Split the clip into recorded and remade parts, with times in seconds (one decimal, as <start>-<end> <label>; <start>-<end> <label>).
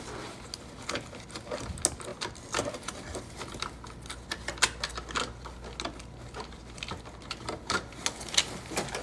0.0-9.0 recorded